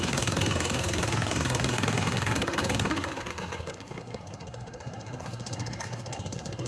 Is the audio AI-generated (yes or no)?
yes